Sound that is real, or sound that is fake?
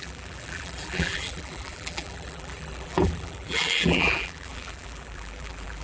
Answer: fake